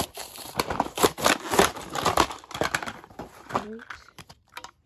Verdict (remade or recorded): remade